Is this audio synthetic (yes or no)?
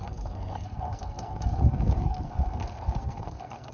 yes